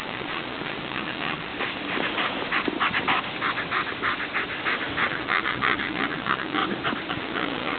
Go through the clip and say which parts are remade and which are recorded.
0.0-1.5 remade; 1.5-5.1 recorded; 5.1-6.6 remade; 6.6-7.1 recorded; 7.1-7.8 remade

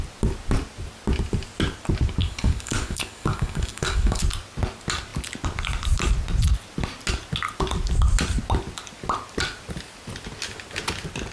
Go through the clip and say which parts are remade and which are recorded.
0.0-2.2 recorded; 2.2-4.2 remade; 4.2-11.3 recorded

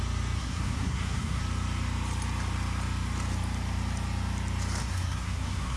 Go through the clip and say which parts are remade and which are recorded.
0.0-0.4 recorded; 0.4-1.4 remade; 1.4-4.8 recorded; 4.8-5.8 remade

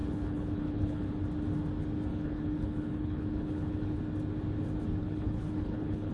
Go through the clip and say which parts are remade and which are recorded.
0.0-1.1 remade; 1.1-2.1 recorded; 2.1-4.0 remade; 4.0-5.0 recorded; 5.0-6.1 remade

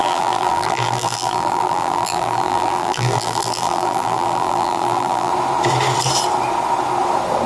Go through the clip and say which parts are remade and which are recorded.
0.0-5.3 remade; 5.3-7.5 recorded

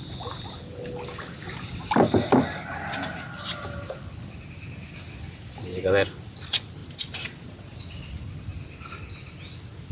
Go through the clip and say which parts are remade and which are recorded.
0.0-6.8 recorded; 6.8-7.8 remade; 7.8-9.9 recorded

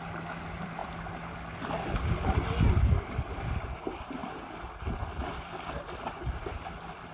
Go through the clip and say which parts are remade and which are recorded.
0.0-7.1 recorded